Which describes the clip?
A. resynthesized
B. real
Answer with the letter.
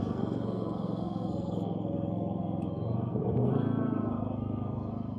A